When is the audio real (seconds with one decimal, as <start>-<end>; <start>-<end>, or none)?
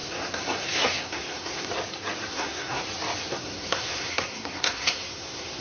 1.7-2.3; 2.8-3.3